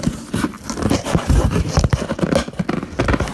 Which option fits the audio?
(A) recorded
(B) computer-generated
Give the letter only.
A